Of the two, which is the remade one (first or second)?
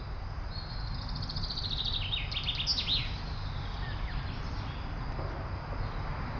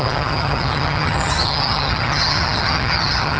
second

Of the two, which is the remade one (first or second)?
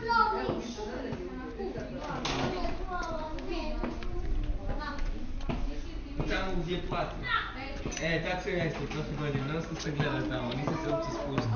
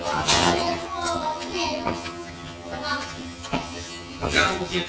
second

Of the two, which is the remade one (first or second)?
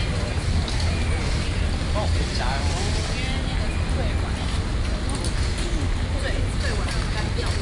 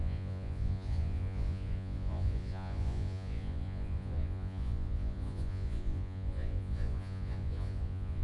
second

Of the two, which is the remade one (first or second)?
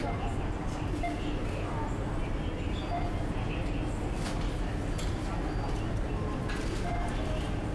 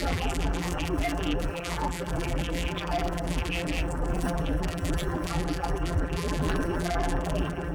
second